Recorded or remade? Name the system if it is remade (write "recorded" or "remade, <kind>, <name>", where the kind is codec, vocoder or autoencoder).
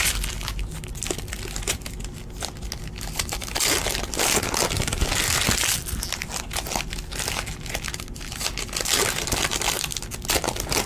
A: recorded